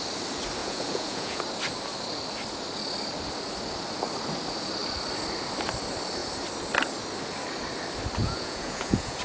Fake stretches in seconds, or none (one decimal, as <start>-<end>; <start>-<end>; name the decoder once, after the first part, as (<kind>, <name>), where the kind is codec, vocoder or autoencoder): 0.6-1.4 (vocoder, Vocos); 8.2-9.2